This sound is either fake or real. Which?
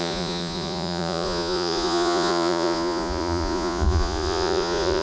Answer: fake